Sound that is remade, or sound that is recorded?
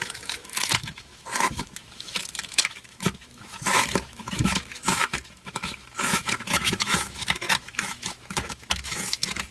remade